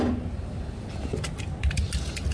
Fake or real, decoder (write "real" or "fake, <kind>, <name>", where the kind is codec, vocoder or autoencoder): real